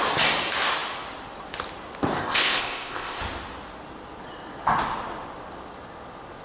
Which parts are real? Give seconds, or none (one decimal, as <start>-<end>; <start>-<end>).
0.0-2.2; 3.2-6.4